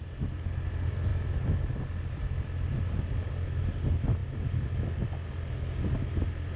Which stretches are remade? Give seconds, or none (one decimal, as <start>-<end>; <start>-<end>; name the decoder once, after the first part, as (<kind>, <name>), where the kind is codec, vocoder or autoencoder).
none